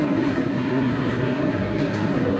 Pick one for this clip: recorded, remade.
remade